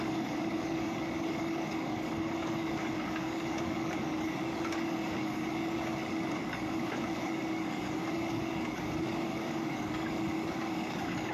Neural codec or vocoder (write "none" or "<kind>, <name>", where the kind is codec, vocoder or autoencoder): codec, DAC